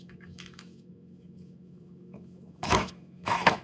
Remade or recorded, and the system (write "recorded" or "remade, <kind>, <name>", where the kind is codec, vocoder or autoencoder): remade, autoencoder, DAC-VAE